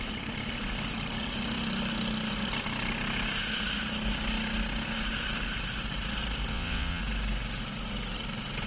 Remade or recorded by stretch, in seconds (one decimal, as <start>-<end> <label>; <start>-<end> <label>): 0.0-6.5 recorded; 6.5-7.0 remade; 7.0-8.7 recorded